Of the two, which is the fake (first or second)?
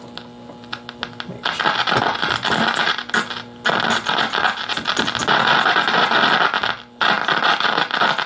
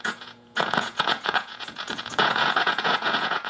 second